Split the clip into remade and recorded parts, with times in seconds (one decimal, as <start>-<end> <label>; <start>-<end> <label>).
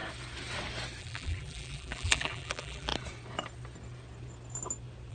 0.0-1.0 recorded; 1.0-2.9 remade; 2.9-5.1 recorded